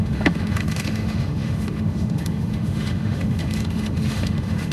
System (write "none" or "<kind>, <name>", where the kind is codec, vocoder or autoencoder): autoencoder, DAC-VAE